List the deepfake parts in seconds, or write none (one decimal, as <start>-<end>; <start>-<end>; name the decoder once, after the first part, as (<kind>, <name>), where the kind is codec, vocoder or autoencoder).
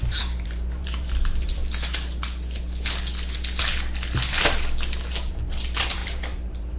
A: 0.0-1.6 (vocoder, BigVGAN v2); 5.1-6.8